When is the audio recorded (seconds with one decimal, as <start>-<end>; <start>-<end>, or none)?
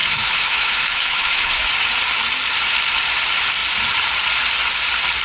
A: 1.7-5.2